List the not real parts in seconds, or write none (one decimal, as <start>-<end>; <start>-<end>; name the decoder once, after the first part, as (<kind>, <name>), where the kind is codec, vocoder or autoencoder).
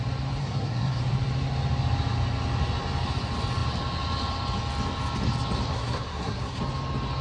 0.4-1.0 (codec, SNAC); 5.7-6.6